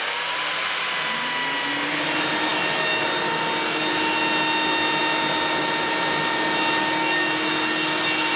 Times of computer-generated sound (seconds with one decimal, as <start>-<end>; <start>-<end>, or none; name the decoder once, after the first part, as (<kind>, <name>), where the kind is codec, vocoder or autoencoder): none